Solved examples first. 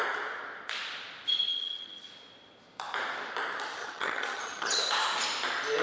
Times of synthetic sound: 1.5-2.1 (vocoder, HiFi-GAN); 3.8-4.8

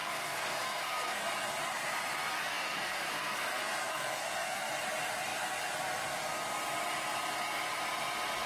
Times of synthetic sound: 0.0-1.2 (codec, SNAC); 2.4-4.7

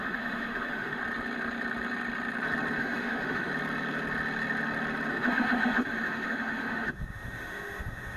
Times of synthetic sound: 0.0-1.0 (autoencoder, DAC-VAE); 2.8-3.5; 5.1-8.2

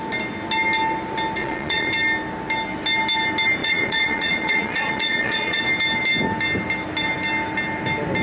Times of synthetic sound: 1.4-1.9 (vocoder, Vocos); 3.6-5.6

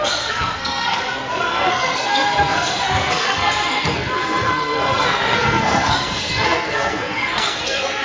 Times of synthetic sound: 0.0-8.0 (codec, SNAC)

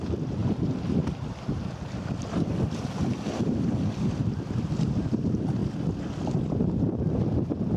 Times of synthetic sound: 0.0-0.4 (vocoder, BigVGAN v2); 2.2-5.6; 6.4-7.8

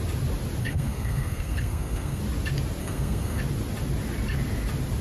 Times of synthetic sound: 0.6-2.2 (codec, SNAC); 2.8-3.4